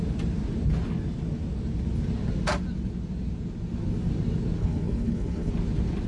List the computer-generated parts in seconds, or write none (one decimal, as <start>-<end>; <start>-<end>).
4.6-5.5